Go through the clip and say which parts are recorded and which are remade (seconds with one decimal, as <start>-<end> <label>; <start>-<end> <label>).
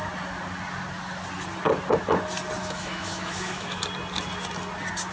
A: 0.0-2.6 recorded; 2.6-3.8 remade; 3.8-5.1 recorded